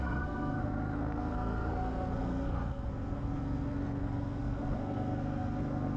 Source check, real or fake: fake